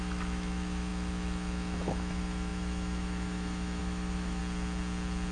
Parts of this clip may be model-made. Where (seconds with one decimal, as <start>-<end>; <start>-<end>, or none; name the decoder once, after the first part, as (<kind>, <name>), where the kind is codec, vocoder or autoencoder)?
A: 0.0-4.4 (autoencoder, DAC-VAE)